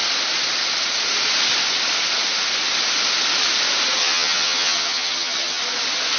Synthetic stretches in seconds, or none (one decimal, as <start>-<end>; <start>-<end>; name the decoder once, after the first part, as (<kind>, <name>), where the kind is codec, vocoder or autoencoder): 4.0-5.6 (vocoder, HiFi-GAN)